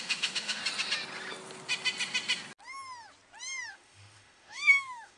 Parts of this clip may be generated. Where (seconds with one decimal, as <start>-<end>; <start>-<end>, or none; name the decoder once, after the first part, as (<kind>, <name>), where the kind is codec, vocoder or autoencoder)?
0.0-0.6 (autoencoder, DAC-VAE); 3.7-5.2